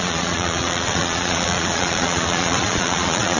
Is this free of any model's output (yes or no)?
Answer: no